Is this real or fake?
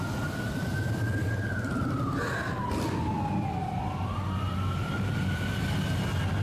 real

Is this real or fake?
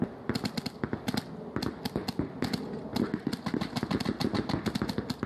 real